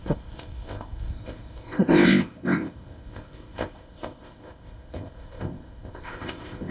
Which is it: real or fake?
fake